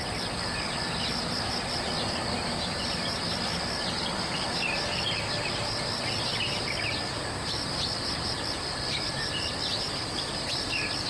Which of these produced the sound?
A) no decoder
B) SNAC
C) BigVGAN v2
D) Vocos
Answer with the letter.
A